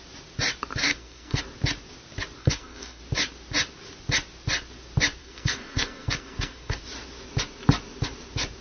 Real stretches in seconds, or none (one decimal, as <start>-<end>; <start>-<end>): 0.0-0.8; 1.4-2.4; 3.0-5.2; 6.8-8.6